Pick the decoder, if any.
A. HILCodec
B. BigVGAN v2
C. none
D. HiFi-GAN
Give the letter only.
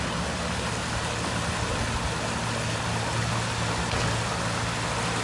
C